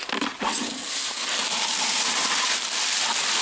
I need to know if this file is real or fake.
real